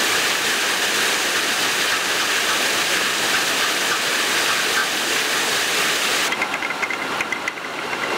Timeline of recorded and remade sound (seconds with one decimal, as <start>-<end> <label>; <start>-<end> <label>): 0.0-8.2 recorded